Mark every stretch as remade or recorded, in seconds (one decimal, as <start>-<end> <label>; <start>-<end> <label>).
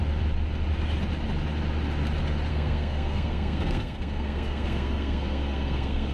0.0-2.5 recorded; 2.5-6.1 remade